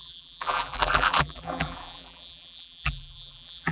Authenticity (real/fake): fake